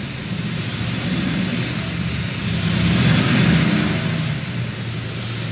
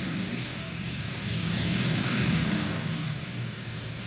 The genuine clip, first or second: first